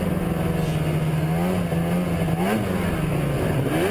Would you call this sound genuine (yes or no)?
yes